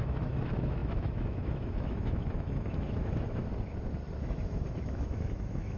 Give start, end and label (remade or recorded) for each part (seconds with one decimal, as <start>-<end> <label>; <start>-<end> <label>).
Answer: 0.0-3.5 remade; 3.5-4.2 recorded; 4.2-5.8 remade